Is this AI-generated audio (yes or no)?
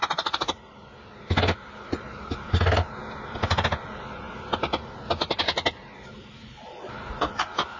no